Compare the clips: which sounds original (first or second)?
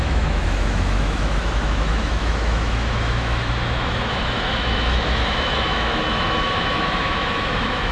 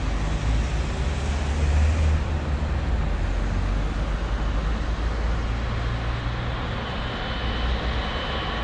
second